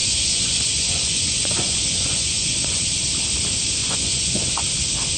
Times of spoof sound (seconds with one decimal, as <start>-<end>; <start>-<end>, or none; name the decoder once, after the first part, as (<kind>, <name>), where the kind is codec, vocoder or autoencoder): 0.0-2.8 (vocoder, Vocos); 3.8-4.7